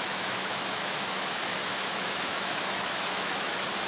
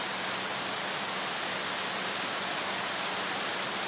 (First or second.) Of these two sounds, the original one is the second